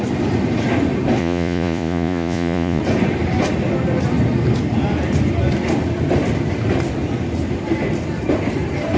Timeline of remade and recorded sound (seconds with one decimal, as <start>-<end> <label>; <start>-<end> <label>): 0.0-1.2 recorded; 1.2-2.8 remade; 2.8-9.0 recorded